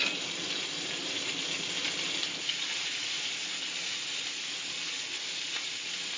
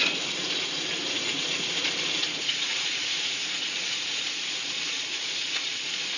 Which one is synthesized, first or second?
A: second